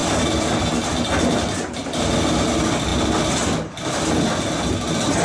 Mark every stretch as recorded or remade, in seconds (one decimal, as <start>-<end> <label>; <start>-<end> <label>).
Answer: 0.0-5.2 recorded